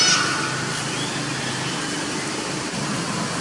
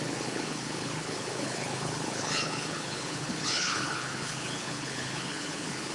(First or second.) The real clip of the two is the first